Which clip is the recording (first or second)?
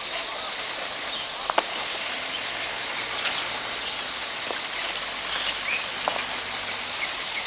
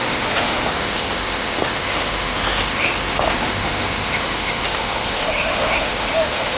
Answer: first